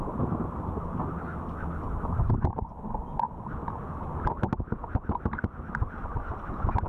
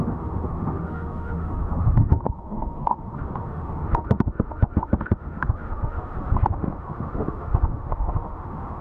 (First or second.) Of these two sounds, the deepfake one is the second